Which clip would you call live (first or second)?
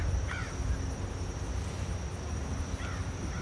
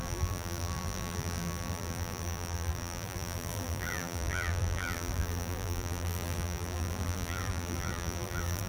first